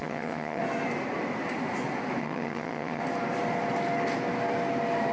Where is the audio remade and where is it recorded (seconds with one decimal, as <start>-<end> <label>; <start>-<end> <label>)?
0.0-0.6 remade; 0.6-2.2 recorded; 2.2-3.0 remade; 3.0-5.1 recorded